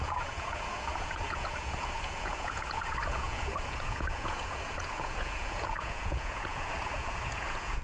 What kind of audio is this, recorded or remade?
remade